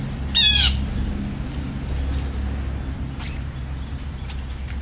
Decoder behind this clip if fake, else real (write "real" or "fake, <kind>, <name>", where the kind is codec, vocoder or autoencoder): real